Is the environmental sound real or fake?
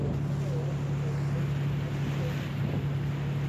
real